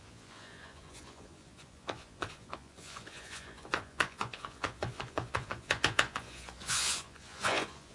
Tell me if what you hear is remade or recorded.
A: remade